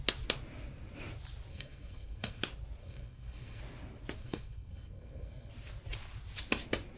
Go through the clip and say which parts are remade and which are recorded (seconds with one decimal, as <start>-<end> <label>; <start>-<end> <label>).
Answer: 0.0-1.5 recorded; 1.5-2.4 remade; 2.4-2.8 recorded; 2.8-3.6 remade; 3.6-4.2 recorded; 4.2-5.5 remade; 5.5-7.0 recorded

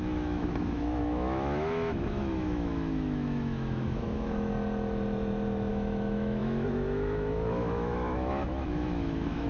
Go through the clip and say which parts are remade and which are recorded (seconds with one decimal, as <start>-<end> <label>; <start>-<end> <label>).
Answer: 0.0-4.5 remade; 4.5-5.7 recorded; 5.7-9.5 remade

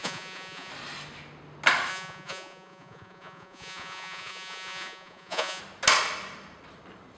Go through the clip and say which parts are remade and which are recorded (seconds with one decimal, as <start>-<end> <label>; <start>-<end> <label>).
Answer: 0.0-0.7 remade; 0.7-1.9 recorded; 1.9-5.6 remade; 5.6-7.2 recorded

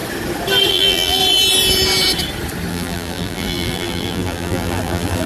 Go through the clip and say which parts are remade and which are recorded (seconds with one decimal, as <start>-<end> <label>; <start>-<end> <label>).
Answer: 0.0-0.7 recorded; 0.7-1.2 remade; 1.2-2.7 recorded; 2.7-5.3 remade